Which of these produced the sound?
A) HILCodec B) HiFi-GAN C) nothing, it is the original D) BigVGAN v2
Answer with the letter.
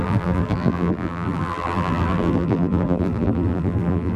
D